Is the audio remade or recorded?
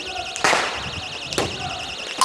recorded